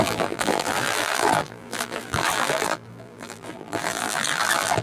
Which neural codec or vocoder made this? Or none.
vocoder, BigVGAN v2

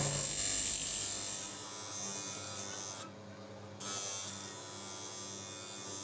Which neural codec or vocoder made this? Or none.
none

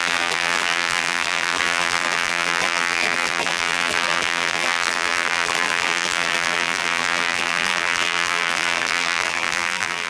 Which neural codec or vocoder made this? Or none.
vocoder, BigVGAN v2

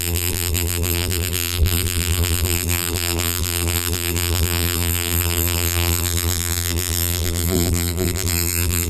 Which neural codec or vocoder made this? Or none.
vocoder, BigVGAN v2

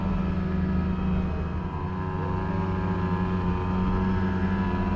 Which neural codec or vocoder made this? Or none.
none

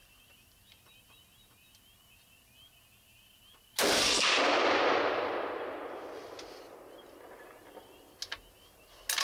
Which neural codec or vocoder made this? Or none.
none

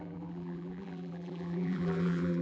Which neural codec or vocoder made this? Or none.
vocoder, BigVGAN v2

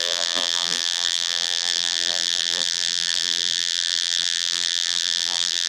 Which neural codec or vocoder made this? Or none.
vocoder, BigVGAN v2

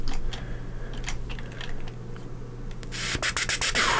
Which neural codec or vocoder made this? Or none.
none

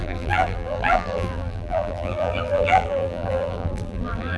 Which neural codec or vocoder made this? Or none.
vocoder, BigVGAN v2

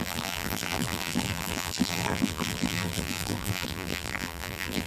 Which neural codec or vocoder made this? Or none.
vocoder, BigVGAN v2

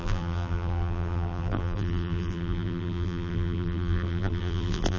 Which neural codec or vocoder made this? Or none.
vocoder, BigVGAN v2